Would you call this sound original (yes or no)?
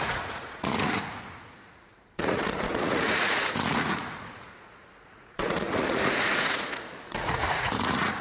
no